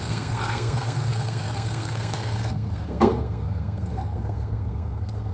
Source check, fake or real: fake